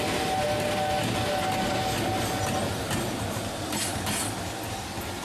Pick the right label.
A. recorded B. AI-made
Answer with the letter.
A